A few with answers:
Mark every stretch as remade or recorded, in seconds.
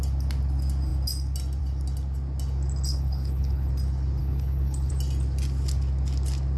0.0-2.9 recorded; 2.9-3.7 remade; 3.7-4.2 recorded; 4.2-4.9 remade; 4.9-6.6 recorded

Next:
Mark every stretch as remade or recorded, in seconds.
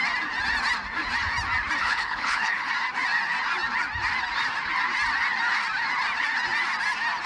0.0-1.8 recorded; 1.8-2.7 remade; 2.7-7.3 recorded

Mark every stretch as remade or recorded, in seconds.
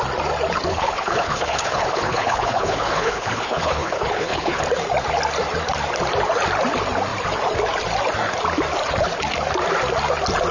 0.0-0.7 recorded; 0.7-4.6 remade; 4.6-10.5 recorded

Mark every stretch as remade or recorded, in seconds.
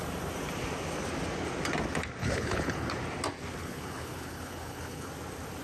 0.0-2.2 recorded; 2.2-2.9 remade; 2.9-3.6 recorded; 3.6-5.1 remade; 5.1-5.6 recorded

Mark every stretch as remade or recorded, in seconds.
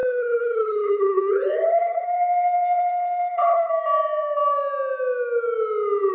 0.0-3.7 remade; 3.7-6.1 recorded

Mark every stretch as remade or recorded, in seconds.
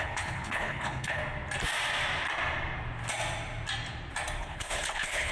0.0-1.2 remade; 1.2-4.4 recorded; 4.4-5.3 remade